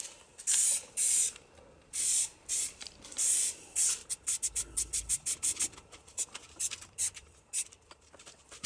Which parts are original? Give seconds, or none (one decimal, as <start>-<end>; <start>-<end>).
1.0-1.9